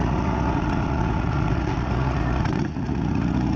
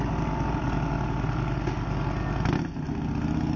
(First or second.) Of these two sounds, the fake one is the first